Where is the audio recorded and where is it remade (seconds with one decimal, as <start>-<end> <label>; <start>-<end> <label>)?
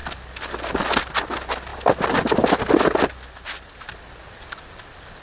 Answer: 0.0-5.2 recorded